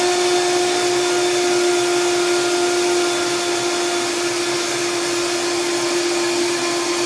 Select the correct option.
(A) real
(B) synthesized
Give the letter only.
A